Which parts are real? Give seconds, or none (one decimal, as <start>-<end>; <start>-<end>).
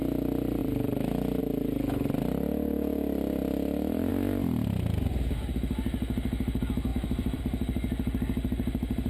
0.0-0.6; 1.4-3.4; 4.1-6.9; 7.4-9.1